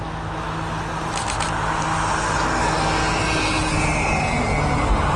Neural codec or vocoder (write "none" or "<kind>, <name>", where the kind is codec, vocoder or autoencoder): none